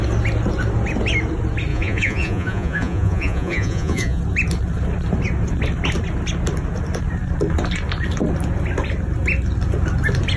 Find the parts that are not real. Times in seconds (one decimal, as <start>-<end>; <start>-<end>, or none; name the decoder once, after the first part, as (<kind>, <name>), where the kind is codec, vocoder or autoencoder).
1.7-4.2 (vocoder, Vocos)